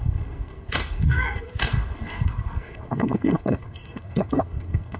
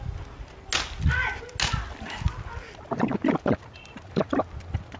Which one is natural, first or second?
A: second